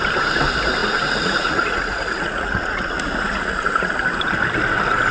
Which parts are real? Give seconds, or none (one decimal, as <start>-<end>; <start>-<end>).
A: 0.0-0.8; 3.9-5.1